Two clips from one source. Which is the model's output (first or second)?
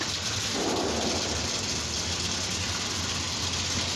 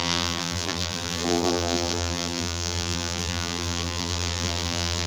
second